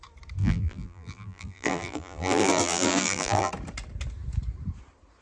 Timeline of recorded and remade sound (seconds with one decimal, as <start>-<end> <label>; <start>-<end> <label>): 0.0-0.4 recorded; 0.4-3.5 remade; 3.5-5.2 recorded

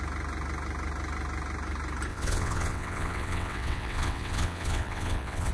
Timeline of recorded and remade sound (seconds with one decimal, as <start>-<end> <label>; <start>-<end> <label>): 0.0-2.1 recorded; 2.1-5.5 remade

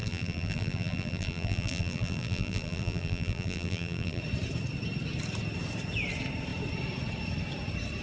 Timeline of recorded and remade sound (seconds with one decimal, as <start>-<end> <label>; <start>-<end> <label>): 0.0-4.2 remade; 4.2-8.0 recorded